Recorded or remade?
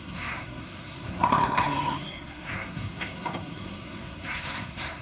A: remade